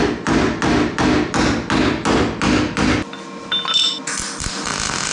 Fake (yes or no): no